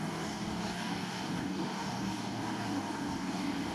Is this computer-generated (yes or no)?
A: yes